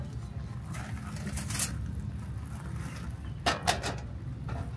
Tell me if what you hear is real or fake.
real